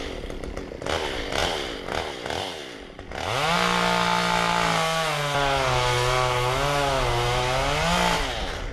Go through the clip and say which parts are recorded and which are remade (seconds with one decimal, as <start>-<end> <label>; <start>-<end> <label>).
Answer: 0.0-8.7 recorded